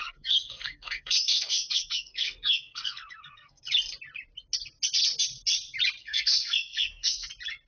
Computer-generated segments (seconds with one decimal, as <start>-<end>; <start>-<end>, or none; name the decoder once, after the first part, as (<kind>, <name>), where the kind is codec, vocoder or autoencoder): 0.0-3.6 (codec, SNAC); 6.0-7.3